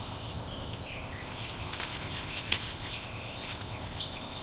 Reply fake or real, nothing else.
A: fake